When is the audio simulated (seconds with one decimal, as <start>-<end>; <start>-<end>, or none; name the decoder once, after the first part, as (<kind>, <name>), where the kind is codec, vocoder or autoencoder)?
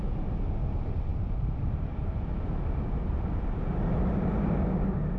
none